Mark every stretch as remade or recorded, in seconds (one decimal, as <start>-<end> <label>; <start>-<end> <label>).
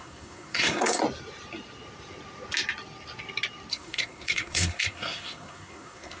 0.0-1.0 remade; 1.0-3.7 recorded; 3.7-6.2 remade